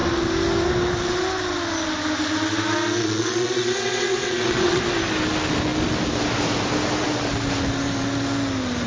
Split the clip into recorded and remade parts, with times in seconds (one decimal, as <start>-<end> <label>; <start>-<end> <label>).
0.0-3.0 recorded; 3.0-4.8 remade; 4.8-8.9 recorded